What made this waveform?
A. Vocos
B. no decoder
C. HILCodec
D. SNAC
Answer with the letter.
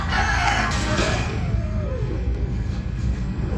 D